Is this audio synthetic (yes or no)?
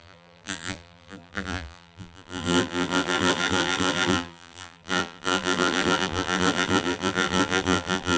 yes